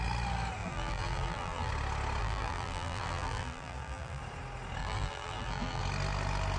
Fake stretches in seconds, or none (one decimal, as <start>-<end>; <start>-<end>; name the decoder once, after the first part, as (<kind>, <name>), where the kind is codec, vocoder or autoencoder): 0.6-1.7 (vocoder, BigVGAN v2); 2.2-4.2; 4.8-5.8